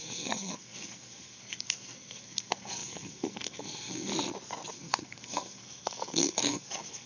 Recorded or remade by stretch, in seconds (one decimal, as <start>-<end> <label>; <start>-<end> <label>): 0.0-4.1 remade; 4.1-4.7 recorded; 4.7-7.1 remade